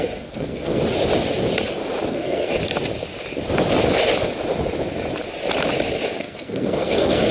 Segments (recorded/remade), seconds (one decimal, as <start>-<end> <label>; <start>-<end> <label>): 0.0-0.8 remade; 0.8-2.1 recorded; 2.1-2.5 remade; 2.5-6.2 recorded; 6.2-7.3 remade